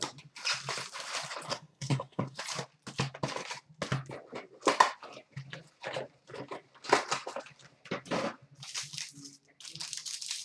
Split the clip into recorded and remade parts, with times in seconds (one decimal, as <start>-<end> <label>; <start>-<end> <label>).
0.0-1.5 recorded; 1.5-2.4 remade; 2.4-10.4 recorded